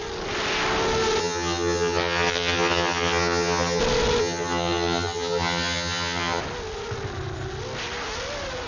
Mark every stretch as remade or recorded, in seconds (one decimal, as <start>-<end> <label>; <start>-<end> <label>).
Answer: 0.0-1.2 recorded; 1.2-3.8 remade; 3.8-4.2 recorded; 4.2-6.4 remade; 6.4-8.7 recorded

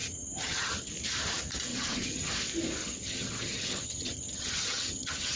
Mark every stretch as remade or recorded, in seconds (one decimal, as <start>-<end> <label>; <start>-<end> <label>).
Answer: 0.0-0.9 remade; 0.9-1.7 recorded; 1.7-2.3 remade; 2.3-2.8 recorded; 2.8-5.4 remade